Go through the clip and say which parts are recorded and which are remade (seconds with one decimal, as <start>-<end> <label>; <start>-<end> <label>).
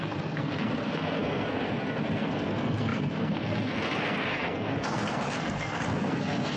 0.0-6.6 remade